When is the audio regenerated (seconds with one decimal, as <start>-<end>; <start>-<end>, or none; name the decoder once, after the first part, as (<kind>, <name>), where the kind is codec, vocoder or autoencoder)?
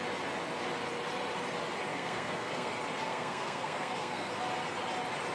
1.9-2.7 (codec, SNAC); 3.1-4.3